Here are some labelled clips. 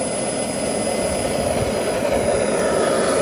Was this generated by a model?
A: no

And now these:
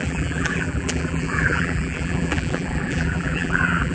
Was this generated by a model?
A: yes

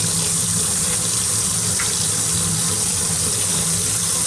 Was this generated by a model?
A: no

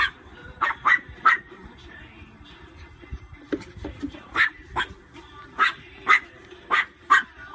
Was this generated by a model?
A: yes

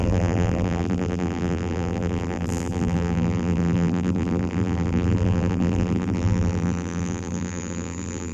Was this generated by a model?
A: yes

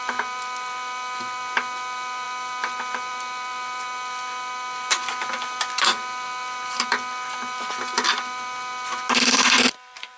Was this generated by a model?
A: yes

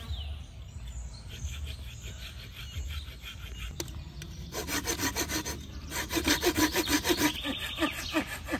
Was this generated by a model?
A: no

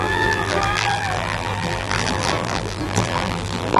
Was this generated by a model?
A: yes